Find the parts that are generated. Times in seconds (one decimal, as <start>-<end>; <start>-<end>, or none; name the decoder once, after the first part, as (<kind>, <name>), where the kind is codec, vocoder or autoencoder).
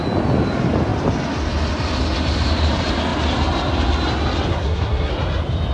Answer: 4.5-5.1 (codec, SNAC)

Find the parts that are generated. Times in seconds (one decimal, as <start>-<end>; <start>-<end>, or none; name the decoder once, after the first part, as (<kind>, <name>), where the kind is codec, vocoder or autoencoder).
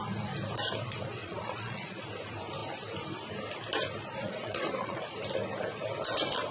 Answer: 1.2-2.0 (vocoder, Vocos); 4.2-5.1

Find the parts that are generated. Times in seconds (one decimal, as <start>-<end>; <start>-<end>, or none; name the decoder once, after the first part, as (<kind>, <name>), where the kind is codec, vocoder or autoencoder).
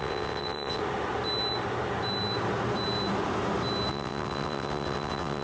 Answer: 0.0-0.8 (vocoder, WaveNeXt); 3.9-5.4